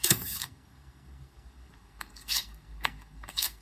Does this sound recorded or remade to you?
remade